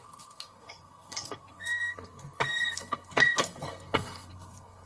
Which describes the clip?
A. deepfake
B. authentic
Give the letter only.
A